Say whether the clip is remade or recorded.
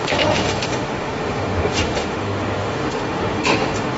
remade